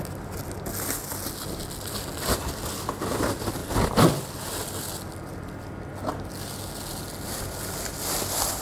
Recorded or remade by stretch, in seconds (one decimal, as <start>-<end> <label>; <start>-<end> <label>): 0.0-8.6 recorded